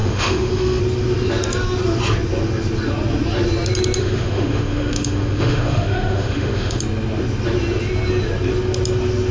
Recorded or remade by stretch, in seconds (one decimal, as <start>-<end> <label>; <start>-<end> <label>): 0.0-0.8 remade; 0.8-4.0 recorded; 4.0-6.8 remade; 6.8-9.3 recorded